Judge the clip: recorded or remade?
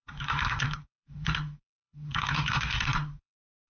remade